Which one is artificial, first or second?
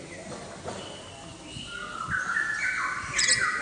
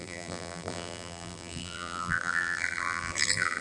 second